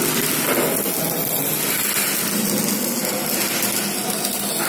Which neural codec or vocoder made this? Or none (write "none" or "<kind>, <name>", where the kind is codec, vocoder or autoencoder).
none